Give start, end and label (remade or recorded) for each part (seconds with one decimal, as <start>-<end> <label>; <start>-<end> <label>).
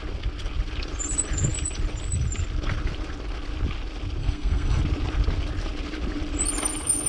0.0-4.2 recorded; 4.2-4.8 remade; 4.8-7.1 recorded